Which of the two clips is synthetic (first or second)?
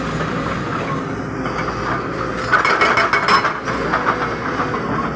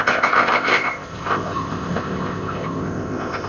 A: second